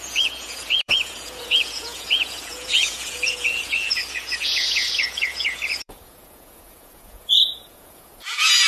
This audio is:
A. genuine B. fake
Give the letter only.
B